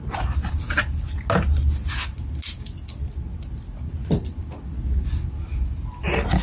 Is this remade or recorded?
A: recorded